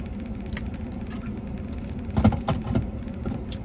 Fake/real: real